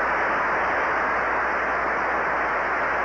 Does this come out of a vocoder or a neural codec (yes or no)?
no